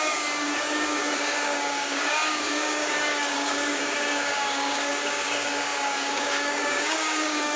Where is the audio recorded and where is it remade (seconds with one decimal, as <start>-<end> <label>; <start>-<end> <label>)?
0.0-7.6 remade